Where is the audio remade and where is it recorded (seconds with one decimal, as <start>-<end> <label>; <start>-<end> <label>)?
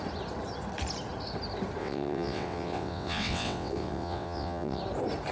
0.0-1.8 recorded; 1.8-4.8 remade; 4.8-5.3 recorded